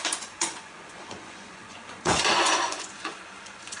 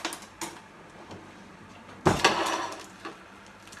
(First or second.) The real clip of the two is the second